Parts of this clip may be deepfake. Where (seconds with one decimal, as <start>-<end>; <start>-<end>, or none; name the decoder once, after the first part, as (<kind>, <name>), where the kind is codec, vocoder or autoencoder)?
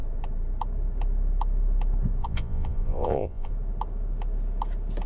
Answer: 2.2-3.5 (vocoder, Vocos)